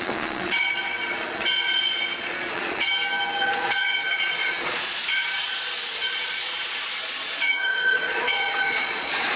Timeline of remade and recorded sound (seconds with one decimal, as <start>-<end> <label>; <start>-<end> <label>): 0.0-2.9 remade; 2.9-3.4 recorded; 3.4-9.4 remade

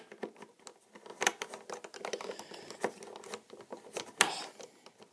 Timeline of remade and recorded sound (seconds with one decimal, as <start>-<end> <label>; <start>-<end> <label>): 0.0-5.1 recorded